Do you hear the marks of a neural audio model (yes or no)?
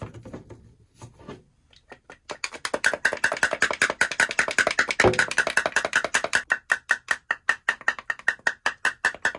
no